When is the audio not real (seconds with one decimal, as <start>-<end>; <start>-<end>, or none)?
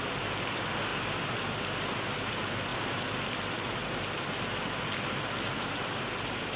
none